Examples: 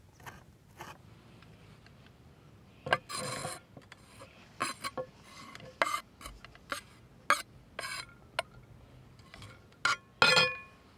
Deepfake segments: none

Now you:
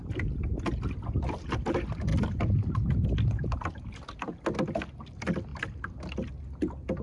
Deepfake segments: none

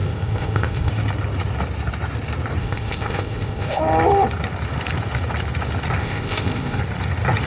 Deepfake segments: 0.0-0.9 (codec, ZipCodec); 2.6-3.8; 6.0-6.8

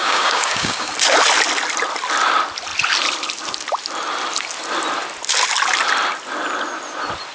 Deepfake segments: 0.0-0.9 (codec, DAC)

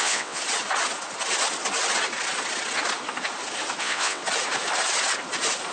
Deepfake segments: 0.0-0.4 (vocoder, WaveNeXt); 3.8-4.2

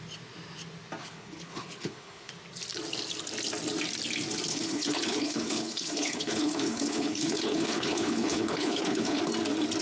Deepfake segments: 1.0-2.3 (codec, HILCodec); 4.5-9.2

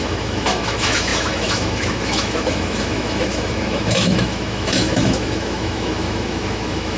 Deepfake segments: 0.0-7.0 (autoencoder, DAC-VAE)

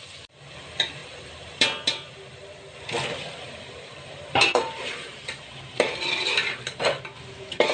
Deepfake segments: 1.0-1.5 (vocoder, BigVGAN v2); 3.2-6.8